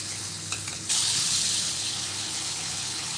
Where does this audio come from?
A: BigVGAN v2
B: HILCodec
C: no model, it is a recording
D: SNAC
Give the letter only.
B